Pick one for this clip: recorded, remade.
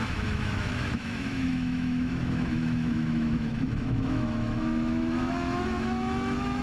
remade